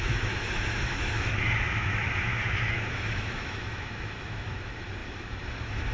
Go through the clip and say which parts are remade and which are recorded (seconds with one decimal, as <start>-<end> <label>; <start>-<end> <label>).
0.0-5.9 remade